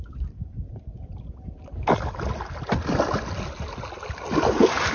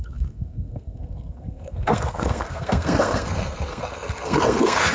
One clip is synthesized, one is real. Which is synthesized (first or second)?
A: second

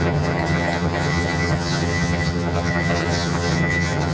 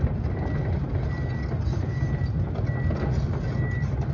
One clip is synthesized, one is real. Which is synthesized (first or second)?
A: first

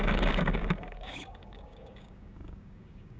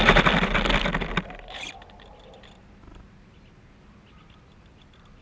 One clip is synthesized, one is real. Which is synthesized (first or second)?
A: first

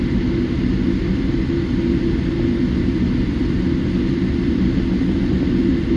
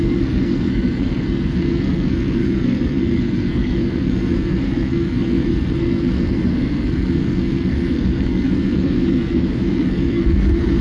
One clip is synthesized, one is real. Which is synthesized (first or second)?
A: second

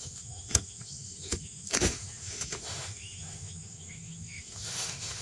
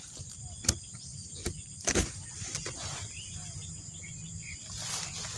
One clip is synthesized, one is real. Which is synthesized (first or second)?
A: first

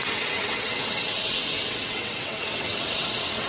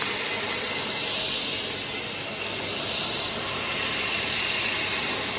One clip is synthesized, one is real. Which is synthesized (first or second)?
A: first